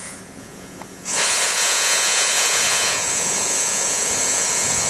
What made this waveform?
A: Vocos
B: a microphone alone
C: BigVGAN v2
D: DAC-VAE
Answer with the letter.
A